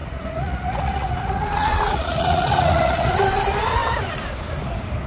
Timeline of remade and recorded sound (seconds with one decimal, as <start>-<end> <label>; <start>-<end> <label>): 0.0-3.1 remade; 3.1-5.1 recorded